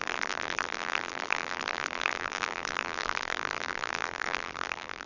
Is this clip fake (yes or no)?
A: yes